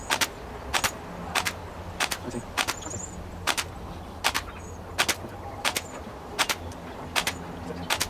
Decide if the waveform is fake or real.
real